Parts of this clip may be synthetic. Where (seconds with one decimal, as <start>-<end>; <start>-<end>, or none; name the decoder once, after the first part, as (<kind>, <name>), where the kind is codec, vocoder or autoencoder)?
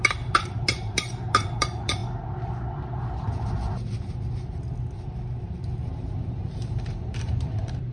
0.0-2.0 (vocoder, BigVGAN v2); 5.4-7.9